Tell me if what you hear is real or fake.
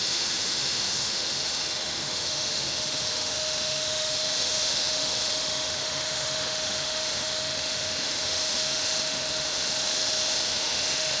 fake